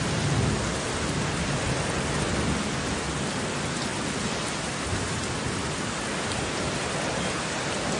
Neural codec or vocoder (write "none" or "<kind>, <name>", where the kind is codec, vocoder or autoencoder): none